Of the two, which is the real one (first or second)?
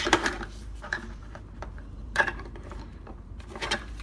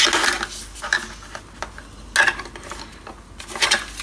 second